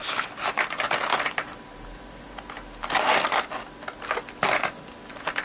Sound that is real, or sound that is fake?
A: real